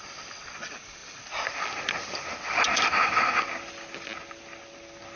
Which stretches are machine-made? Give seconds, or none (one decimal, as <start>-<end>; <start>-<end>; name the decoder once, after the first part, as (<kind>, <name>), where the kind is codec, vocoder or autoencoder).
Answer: none